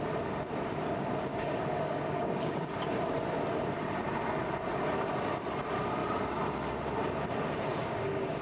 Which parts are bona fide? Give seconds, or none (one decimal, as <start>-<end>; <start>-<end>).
0.0-1.3; 2.7-7.7